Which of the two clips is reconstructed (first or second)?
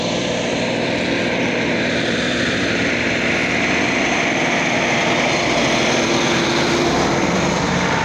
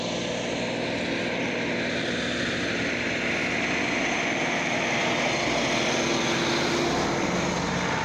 first